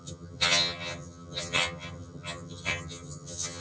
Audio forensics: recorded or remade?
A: remade